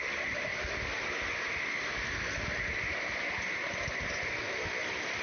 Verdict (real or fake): real